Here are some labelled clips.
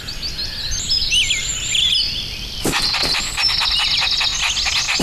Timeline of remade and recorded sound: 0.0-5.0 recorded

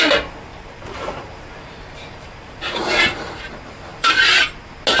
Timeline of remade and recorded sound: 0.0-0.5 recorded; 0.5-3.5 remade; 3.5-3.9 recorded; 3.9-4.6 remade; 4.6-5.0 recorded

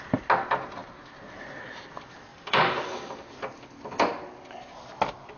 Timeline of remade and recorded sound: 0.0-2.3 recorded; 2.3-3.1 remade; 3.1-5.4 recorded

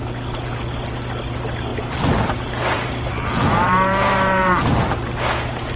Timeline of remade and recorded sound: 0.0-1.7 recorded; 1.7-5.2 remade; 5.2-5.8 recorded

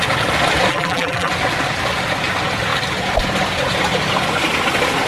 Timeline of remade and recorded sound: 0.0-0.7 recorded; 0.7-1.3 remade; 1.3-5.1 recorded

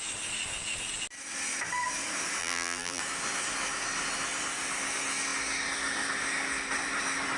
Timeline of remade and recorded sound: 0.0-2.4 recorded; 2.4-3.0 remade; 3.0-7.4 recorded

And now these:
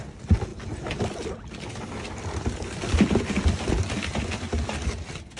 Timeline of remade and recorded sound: 0.0-5.4 recorded

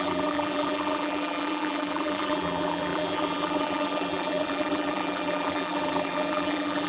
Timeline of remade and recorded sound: 0.0-6.9 remade